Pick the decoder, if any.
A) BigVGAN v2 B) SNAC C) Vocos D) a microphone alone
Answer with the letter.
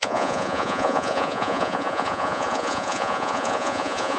C